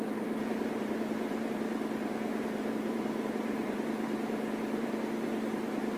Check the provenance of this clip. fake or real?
fake